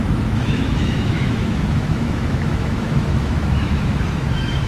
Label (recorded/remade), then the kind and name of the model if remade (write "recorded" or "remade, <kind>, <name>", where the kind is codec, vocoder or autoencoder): remade, autoencoder, DAC-VAE